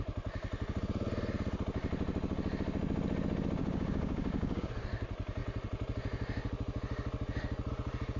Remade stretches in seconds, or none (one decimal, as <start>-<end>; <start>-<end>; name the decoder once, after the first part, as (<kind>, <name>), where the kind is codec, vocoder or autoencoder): 3.6-4.7 (codec, DAC)